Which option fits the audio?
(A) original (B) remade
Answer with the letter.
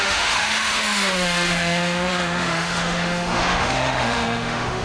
B